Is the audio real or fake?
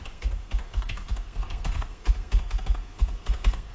fake